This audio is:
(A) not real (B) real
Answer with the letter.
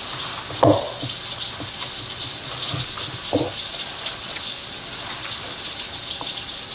B